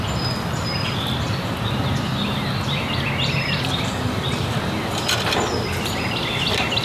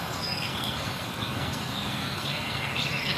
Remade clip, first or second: second